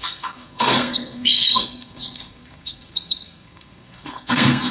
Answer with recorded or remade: remade